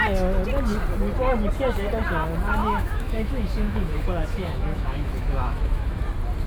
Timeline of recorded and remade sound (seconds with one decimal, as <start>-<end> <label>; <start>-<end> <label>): 0.0-2.6 recorded; 2.6-6.0 remade; 6.0-6.5 recorded